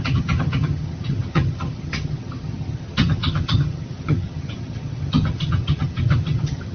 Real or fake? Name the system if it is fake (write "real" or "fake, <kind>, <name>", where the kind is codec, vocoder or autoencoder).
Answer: fake, vocoder, HiFi-GAN